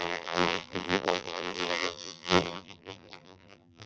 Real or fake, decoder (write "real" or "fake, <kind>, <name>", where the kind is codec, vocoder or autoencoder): fake, vocoder, BigVGAN v2